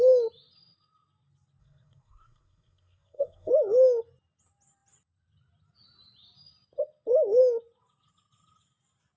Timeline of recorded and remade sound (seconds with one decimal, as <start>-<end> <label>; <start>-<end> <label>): 0.0-1.6 recorded; 1.6-3.5 remade; 3.5-9.2 recorded